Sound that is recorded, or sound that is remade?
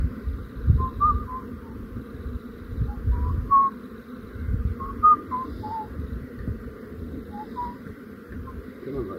remade